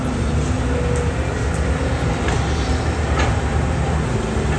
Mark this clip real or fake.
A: real